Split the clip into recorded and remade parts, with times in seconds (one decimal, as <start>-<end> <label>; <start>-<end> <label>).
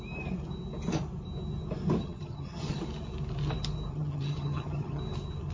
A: 0.0-2.0 recorded; 2.0-2.8 remade; 2.8-3.9 recorded; 3.9-5.0 remade; 5.0-5.5 recorded